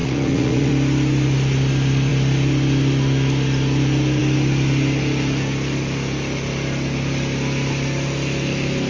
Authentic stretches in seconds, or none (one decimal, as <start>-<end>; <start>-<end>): 0.7-8.9